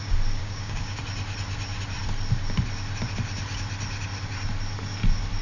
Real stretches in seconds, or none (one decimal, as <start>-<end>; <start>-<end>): 0.0-0.4; 1.0-5.4